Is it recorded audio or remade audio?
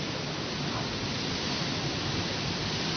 recorded